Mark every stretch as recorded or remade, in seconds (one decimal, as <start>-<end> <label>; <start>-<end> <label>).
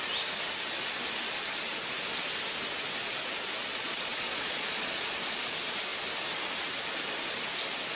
0.0-3.7 recorded; 3.7-5.1 remade; 5.1-8.0 recorded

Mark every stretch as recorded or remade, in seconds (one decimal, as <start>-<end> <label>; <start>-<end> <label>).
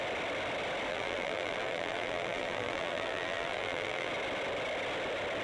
0.0-0.9 recorded; 0.9-4.1 remade; 4.1-5.4 recorded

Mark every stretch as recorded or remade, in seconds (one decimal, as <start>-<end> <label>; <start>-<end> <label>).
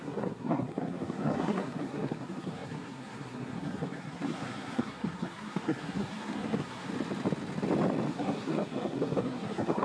0.0-6.9 remade; 6.9-8.1 recorded; 8.1-9.8 remade